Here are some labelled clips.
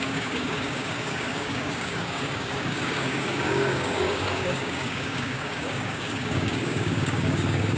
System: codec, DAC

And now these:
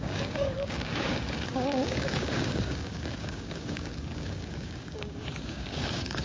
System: codec, DAC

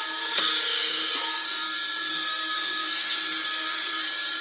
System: codec, DAC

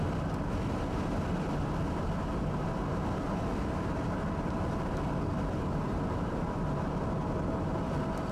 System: none